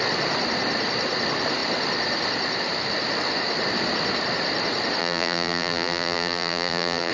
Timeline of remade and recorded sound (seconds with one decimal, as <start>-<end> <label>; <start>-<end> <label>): 0.0-5.0 recorded; 5.0-7.1 remade